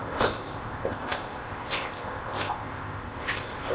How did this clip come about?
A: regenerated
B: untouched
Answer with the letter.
A